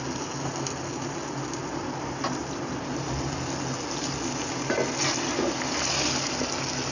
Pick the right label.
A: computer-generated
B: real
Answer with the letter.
B